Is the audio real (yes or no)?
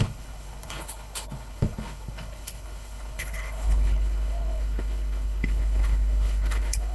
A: no